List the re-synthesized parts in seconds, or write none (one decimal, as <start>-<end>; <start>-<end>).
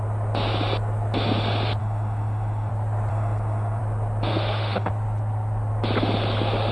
1.8-2.7; 3.1-3.8; 4.3-4.9